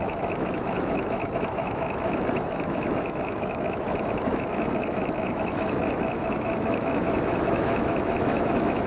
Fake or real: fake